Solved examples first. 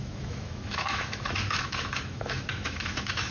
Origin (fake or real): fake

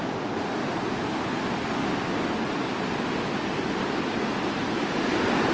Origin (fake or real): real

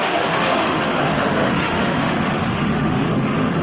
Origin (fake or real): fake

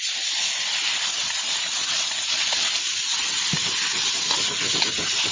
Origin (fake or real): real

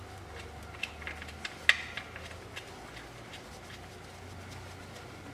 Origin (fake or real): real